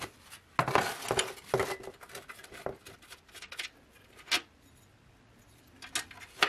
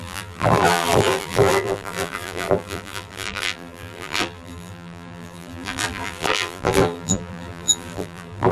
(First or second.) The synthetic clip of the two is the second